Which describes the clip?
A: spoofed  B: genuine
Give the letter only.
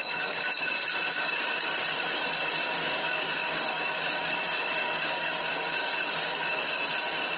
A